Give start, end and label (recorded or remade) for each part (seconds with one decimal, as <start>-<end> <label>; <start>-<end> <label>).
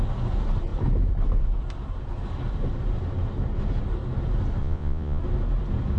0.0-4.6 recorded; 4.6-5.2 remade; 5.2-6.0 recorded